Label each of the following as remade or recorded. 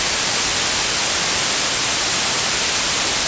recorded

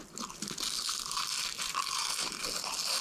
recorded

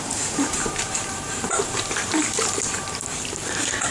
remade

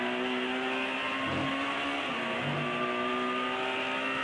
recorded